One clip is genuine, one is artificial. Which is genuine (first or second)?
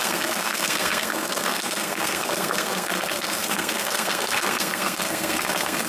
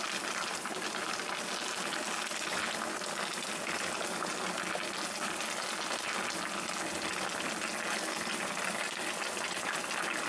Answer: second